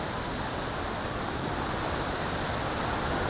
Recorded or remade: recorded